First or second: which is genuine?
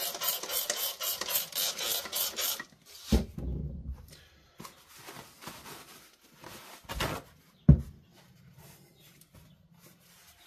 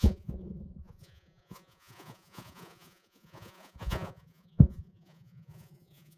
first